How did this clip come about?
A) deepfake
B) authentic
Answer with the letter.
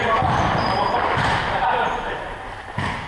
A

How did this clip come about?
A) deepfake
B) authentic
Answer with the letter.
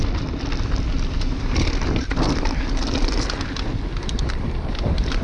B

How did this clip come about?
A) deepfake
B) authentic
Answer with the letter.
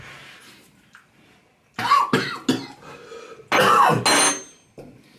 B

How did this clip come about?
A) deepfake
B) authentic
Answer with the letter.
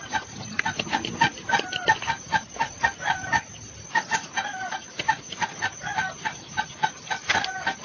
B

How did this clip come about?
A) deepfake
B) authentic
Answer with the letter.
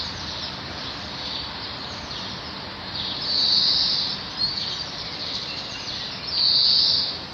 A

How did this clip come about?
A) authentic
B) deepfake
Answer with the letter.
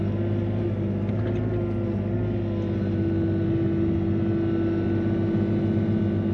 A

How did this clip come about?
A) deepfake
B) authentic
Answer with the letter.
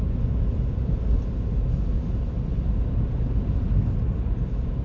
B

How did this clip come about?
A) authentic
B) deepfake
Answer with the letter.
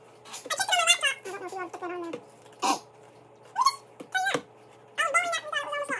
A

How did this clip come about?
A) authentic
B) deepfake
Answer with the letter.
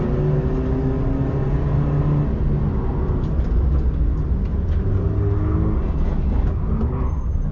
A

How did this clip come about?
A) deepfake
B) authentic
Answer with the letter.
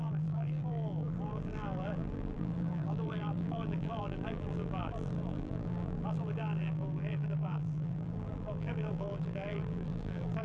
A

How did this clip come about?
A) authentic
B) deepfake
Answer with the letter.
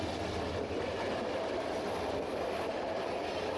A